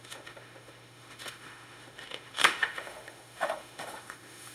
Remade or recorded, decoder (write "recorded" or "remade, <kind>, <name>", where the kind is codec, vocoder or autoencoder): remade, autoencoder, DAC-VAE